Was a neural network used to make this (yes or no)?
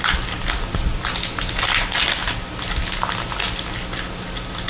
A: no